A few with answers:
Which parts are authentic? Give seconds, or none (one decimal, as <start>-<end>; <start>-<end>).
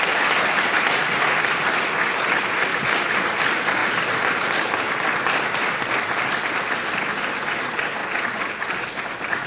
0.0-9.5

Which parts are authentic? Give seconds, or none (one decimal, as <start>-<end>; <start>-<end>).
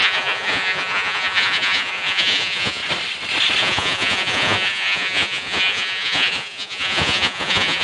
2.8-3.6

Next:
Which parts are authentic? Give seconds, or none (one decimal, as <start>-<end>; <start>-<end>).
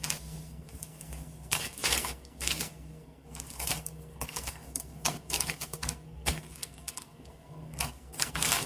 none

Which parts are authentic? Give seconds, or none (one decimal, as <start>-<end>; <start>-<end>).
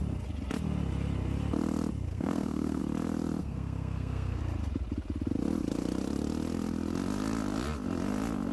0.0-2.1; 2.8-3.4; 4.4-8.5